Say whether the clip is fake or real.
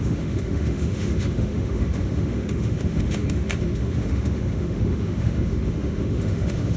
fake